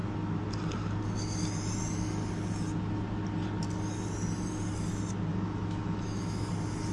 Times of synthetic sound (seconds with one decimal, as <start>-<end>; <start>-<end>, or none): 5.3-6.5